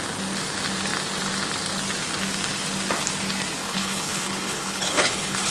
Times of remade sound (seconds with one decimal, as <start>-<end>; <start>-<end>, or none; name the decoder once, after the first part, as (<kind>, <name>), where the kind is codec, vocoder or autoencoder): 3.6-5.5 (codec, HILCodec)

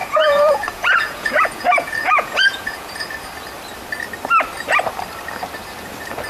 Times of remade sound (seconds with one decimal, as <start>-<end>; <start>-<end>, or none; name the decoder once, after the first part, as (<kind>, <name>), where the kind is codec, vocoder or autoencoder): 0.0-3.1 (vocoder, Vocos)

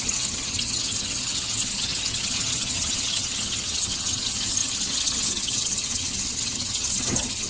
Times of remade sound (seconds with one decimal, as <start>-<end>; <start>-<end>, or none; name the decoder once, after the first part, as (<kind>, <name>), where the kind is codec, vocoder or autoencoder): 0.0-7.5 (vocoder, HiFi-GAN)

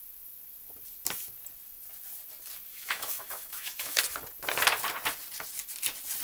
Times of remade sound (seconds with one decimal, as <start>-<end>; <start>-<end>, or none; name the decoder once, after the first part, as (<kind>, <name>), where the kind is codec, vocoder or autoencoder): 2.7-4.0 (autoencoder, DAC-VAE)

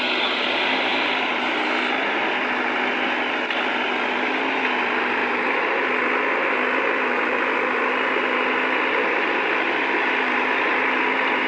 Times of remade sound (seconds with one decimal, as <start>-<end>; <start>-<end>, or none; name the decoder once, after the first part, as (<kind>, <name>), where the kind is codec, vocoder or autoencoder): 0.9-2.3 (vocoder, BigVGAN v2); 5.2-10.3

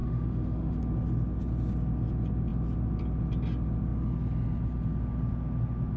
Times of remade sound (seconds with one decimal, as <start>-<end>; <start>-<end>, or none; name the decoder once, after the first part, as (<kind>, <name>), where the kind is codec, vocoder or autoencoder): 0.0-0.8 (autoencoder, DAC-VAE)